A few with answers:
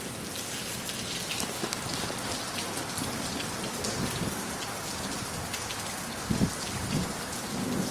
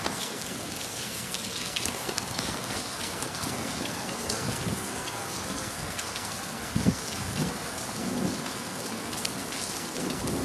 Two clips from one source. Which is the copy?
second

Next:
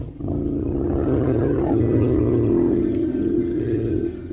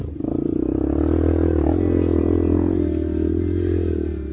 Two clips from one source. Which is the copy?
first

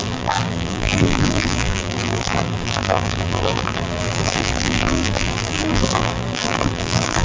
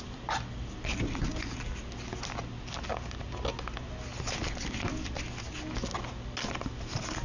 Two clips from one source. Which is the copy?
first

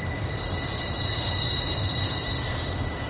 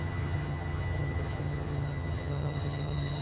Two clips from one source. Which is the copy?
second